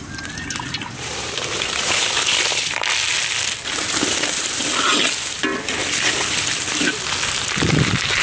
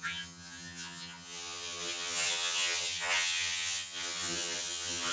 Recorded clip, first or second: first